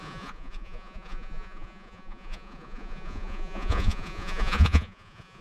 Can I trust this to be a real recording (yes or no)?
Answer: no